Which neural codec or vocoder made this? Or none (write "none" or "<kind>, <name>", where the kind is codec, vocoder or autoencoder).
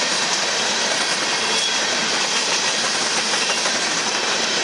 vocoder, BigVGAN v2